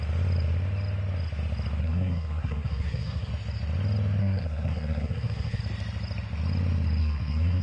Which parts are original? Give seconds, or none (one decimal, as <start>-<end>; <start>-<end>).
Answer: 0.0-1.8; 3.3-4.2; 5.6-7.0